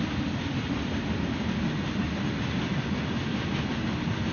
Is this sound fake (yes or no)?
no